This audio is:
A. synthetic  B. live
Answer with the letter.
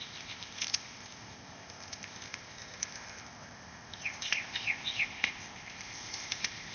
A